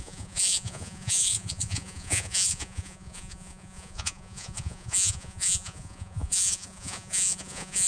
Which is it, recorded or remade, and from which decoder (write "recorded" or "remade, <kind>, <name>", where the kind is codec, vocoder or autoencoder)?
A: remade, vocoder, Vocos